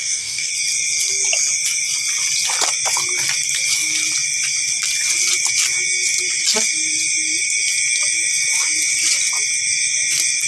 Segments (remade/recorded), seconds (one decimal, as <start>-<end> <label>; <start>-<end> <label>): 0.0-0.5 remade; 0.5-10.5 recorded